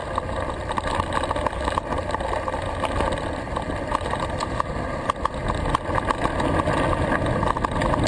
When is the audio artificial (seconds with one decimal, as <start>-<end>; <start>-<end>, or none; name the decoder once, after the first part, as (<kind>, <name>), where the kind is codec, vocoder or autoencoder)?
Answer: none